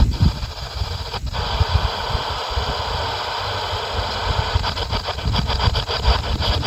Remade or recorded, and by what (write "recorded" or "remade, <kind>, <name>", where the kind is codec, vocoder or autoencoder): recorded